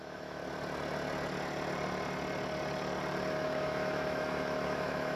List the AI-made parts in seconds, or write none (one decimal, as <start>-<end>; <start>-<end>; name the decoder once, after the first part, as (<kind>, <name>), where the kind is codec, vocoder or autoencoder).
0.0-0.4 (autoencoder, DAC-VAE); 3.3-5.2

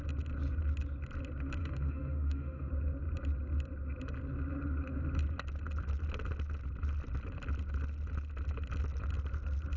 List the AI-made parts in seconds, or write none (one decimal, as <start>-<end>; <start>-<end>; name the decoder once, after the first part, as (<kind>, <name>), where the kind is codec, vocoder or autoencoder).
1.6-2.7 (autoencoder, DAC-VAE)